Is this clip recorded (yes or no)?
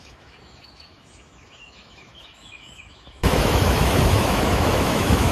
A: no